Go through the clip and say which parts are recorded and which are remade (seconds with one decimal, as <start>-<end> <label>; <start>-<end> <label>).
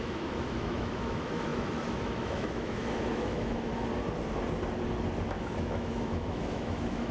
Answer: 0.0-3.7 remade; 3.7-5.3 recorded; 5.3-7.1 remade